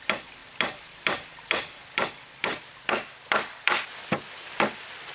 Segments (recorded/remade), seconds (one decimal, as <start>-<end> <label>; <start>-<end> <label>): 0.0-2.5 recorded; 2.5-3.9 remade; 3.9-5.1 recorded

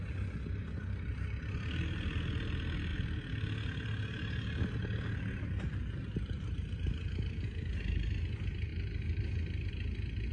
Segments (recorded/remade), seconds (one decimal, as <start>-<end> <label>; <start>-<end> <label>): 0.0-10.3 recorded

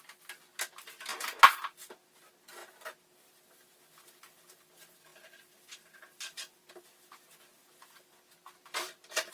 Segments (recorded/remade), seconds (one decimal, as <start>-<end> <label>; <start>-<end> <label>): 0.0-2.6 recorded; 2.6-3.3 remade; 3.3-5.1 recorded; 5.1-6.8 remade; 6.8-8.4 recorded; 8.4-9.3 remade

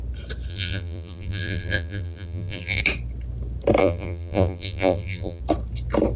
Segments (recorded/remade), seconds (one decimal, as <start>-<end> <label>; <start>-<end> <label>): 0.0-0.5 recorded; 0.5-2.8 remade; 2.8-3.8 recorded; 3.8-5.4 remade; 5.4-6.2 recorded

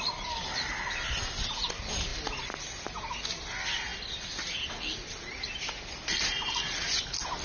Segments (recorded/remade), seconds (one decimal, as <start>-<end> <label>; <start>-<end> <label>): 0.0-7.4 recorded

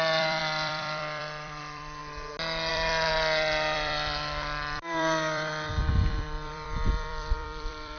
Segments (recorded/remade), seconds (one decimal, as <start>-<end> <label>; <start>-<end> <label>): 0.0-2.0 remade; 2.0-2.7 recorded; 2.7-8.0 remade

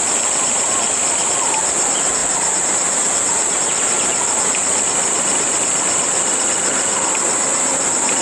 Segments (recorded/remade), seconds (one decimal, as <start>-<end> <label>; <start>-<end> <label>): 0.0-4.1 recorded; 4.1-4.6 remade; 4.6-8.2 recorded

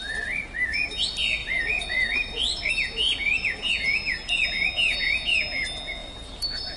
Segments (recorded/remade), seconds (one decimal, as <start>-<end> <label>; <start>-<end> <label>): 0.0-1.4 recorded; 1.4-2.7 remade; 2.7-6.0 recorded; 6.0-6.8 remade